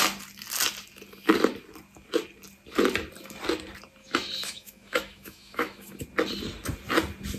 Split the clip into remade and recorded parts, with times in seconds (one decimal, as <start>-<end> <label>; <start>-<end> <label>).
0.0-4.0 recorded; 4.0-6.0 remade; 6.0-7.4 recorded